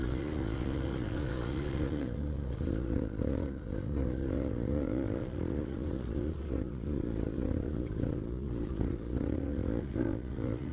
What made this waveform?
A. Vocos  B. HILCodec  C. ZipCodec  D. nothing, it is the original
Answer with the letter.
A